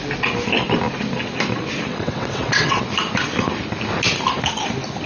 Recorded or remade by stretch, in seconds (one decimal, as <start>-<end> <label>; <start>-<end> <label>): 0.0-1.9 recorded; 1.9-2.8 remade; 2.8-5.1 recorded